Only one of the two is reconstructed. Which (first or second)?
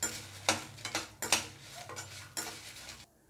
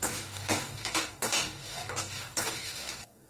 second